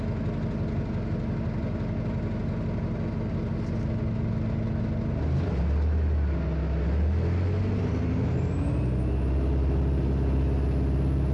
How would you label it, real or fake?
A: real